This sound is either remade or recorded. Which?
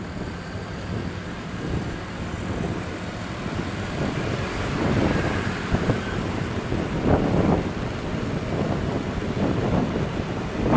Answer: remade